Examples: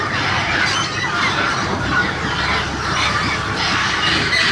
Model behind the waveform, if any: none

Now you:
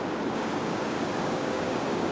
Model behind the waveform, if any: codec, DAC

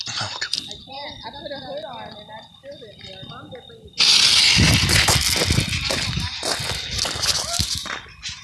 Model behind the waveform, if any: none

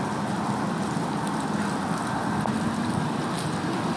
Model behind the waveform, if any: none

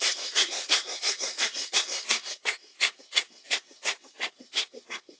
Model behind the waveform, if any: codec, SNAC